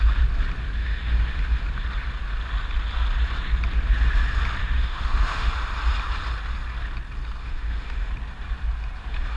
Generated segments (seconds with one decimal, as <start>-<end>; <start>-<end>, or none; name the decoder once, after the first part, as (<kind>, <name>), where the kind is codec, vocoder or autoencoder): 0.8-1.6 (autoencoder, DAC-VAE); 4.6-5.5; 7.4-8.1